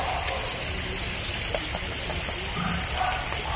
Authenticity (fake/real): real